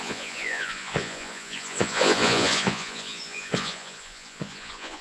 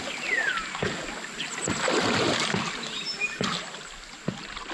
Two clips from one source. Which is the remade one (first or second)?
first